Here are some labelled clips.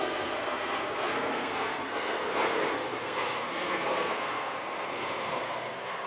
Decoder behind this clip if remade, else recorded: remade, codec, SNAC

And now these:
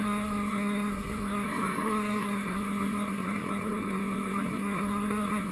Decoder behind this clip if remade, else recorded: remade, codec, SNAC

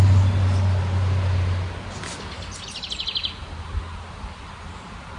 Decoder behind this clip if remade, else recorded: recorded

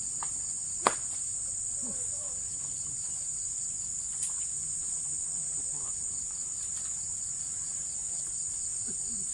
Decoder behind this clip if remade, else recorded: recorded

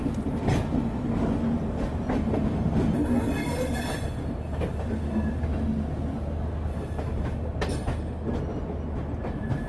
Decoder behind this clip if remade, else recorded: recorded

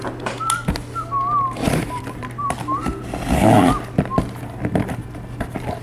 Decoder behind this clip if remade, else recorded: recorded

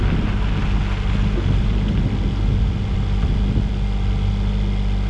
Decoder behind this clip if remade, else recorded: recorded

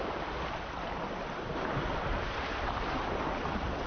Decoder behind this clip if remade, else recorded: recorded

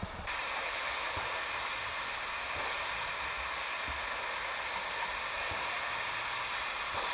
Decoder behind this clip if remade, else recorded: recorded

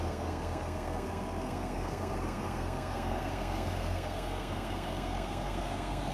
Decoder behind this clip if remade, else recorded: remade, codec, SNAC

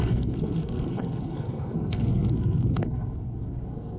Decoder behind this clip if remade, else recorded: remade, codec, SNAC